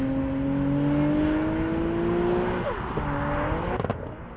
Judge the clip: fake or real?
real